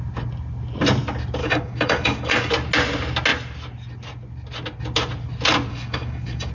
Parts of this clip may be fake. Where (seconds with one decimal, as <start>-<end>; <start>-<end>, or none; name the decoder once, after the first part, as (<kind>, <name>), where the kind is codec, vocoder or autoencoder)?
1.4-2.5 (codec, DAC); 5.7-6.5